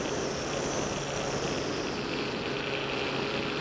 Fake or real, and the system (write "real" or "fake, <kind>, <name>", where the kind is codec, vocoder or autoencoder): real